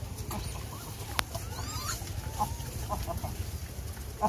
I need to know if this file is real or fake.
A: real